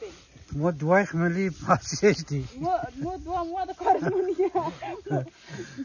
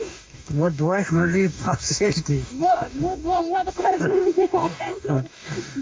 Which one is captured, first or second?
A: first